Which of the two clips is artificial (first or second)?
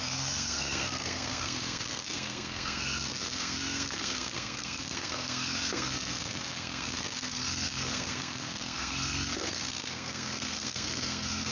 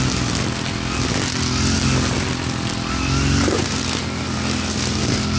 first